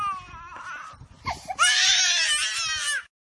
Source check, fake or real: real